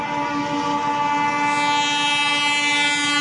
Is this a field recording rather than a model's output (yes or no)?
yes